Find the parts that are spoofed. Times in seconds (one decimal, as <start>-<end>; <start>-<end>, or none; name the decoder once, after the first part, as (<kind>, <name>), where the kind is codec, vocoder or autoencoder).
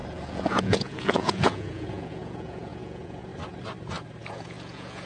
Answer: 0.0-3.3 (vocoder, Vocos); 4.3-5.1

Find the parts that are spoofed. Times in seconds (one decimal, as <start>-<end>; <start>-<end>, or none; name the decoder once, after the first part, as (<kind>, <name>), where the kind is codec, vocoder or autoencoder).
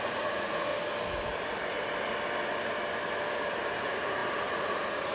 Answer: 0.0-0.7 (vocoder, Vocos); 3.8-5.1